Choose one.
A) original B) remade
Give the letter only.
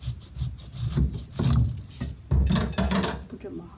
A